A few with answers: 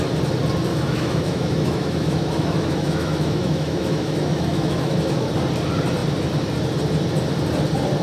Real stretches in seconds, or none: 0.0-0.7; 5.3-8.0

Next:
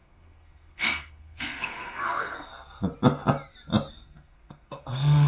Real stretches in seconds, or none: 2.5-3.9

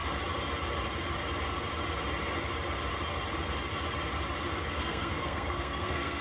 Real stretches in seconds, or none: 0.0-4.8

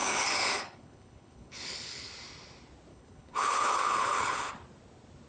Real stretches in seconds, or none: 2.1-2.9; 4.5-5.3

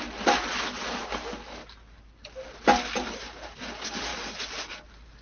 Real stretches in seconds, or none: 0.0-5.2

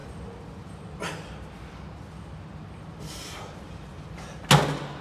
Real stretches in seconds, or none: 0.0-5.0